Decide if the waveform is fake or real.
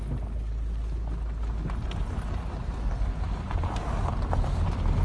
real